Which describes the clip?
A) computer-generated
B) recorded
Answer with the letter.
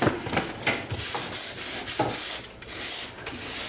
B